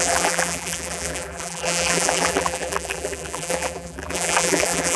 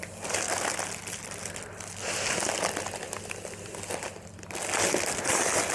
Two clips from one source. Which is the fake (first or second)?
first